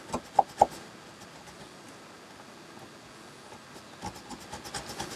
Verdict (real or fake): real